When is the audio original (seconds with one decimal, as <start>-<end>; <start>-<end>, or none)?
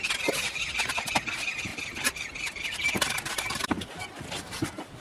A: 0.0-5.0